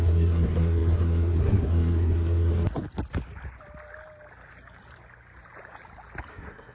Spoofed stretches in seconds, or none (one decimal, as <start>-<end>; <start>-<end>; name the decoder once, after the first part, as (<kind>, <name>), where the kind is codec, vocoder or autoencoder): 0.0-2.5 (codec, SNAC); 6.3-6.7